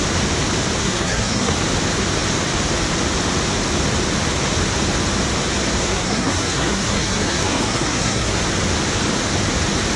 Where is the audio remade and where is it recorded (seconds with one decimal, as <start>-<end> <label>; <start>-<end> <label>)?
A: 0.0-0.8 recorded; 0.8-1.5 remade; 1.5-5.8 recorded; 5.8-8.4 remade; 8.4-10.0 recorded